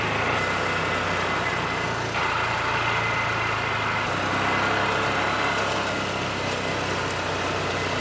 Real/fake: real